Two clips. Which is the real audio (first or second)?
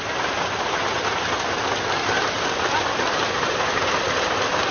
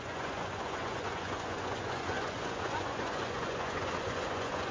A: first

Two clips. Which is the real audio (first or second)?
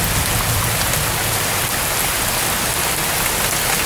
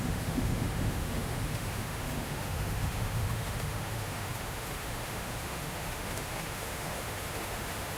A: first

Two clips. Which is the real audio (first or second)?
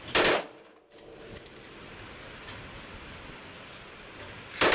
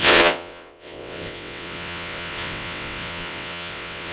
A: first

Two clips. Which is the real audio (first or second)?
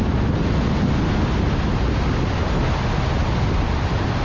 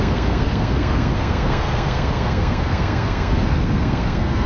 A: first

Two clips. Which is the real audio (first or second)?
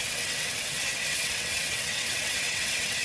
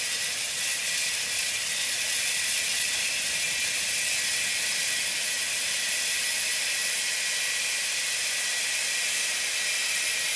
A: second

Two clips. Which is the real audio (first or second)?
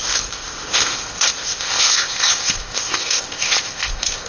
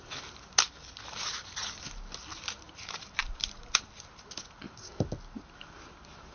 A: second